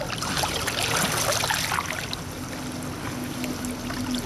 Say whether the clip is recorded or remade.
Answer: recorded